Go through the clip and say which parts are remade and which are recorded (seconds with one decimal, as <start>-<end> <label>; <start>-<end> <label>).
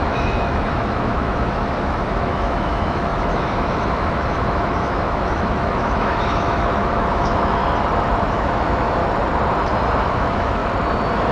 0.0-7.6 remade; 7.6-8.3 recorded; 8.3-9.0 remade; 9.0-10.0 recorded; 10.0-10.6 remade; 10.6-11.3 recorded